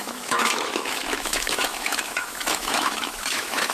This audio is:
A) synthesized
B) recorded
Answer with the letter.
A